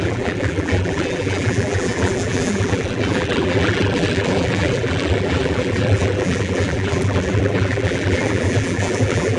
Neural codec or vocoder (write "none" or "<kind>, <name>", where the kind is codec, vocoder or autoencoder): vocoder, BigVGAN v2